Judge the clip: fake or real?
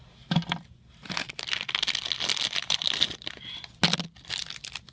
real